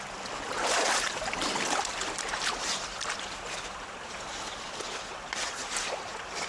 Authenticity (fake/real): fake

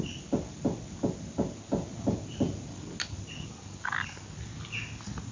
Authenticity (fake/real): real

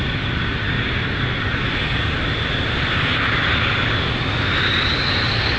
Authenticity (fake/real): real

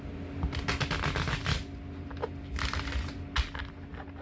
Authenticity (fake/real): real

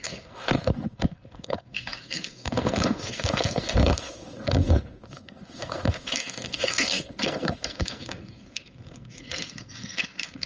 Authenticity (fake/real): fake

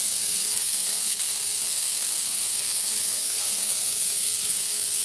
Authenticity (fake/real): fake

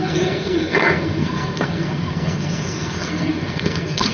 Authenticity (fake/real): fake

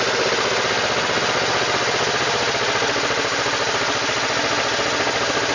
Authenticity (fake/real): real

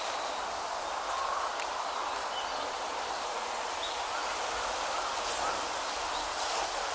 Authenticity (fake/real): real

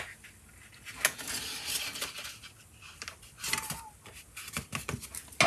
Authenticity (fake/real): real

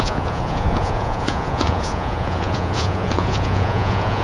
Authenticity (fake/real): fake